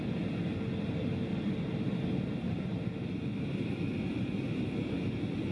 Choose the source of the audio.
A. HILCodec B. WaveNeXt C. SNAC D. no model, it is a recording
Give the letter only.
D